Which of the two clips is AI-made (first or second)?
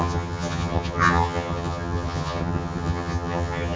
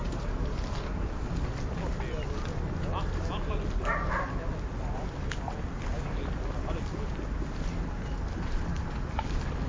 first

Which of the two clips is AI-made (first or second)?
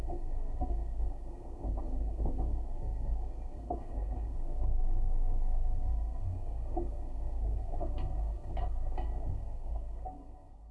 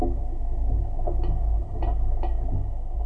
first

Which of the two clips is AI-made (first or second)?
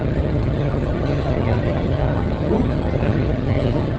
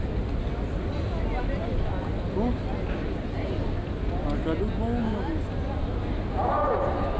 first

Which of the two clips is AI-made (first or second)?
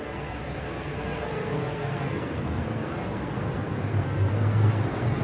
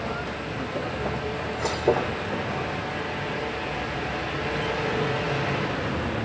first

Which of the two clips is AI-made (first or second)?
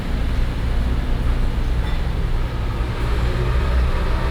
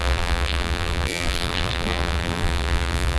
second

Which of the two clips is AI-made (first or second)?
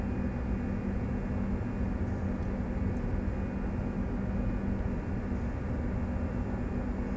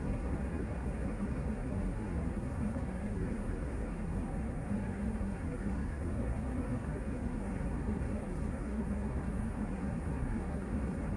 second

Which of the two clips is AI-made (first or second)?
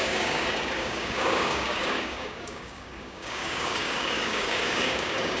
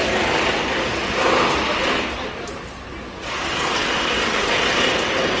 first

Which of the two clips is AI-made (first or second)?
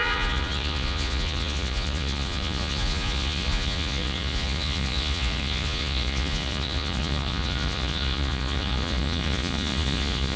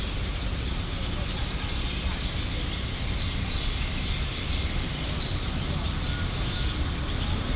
first